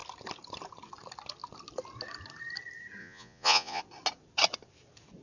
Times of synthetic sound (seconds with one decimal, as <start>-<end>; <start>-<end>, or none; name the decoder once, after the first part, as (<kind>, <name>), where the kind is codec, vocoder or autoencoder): 3.0-3.8 (vocoder, Vocos)